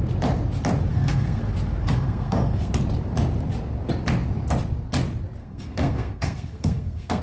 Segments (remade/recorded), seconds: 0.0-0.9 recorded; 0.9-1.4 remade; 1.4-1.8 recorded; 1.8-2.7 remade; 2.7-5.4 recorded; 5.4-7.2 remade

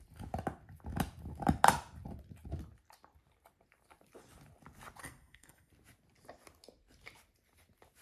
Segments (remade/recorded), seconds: 0.0-5.0 recorded; 5.0-5.7 remade; 5.7-8.0 recorded

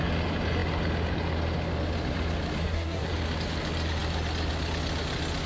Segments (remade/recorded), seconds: 0.0-2.6 recorded; 2.6-3.1 remade; 3.1-5.5 recorded